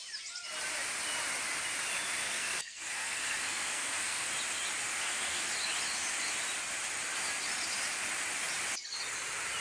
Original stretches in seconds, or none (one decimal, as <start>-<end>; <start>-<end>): 0.0-2.2; 4.3-4.9; 5.5-9.6